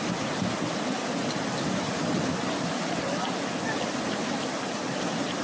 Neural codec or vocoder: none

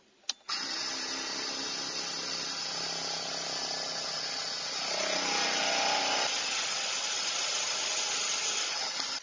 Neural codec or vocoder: none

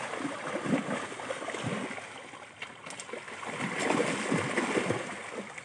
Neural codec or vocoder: none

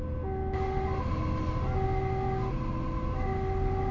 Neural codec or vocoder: none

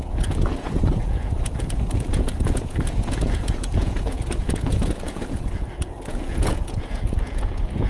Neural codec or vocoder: vocoder, Vocos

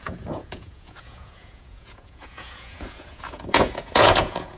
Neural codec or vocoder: vocoder, Vocos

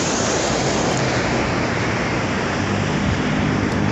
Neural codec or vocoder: none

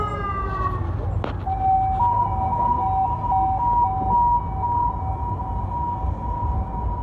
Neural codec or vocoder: none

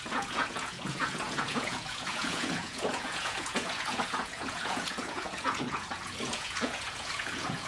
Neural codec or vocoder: vocoder, Vocos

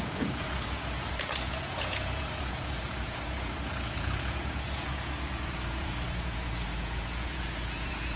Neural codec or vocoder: vocoder, Vocos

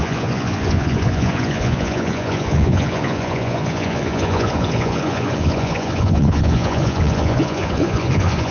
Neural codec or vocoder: vocoder, Vocos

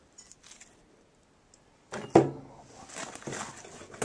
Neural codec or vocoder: none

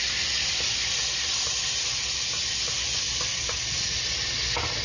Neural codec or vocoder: none